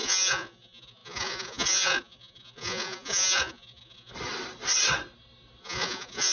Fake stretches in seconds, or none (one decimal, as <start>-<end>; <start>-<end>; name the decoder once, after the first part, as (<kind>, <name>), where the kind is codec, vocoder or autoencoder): 0.0-4.1 (vocoder, Vocos); 5.6-6.3